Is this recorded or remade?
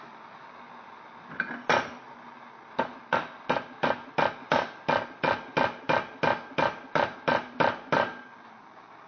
recorded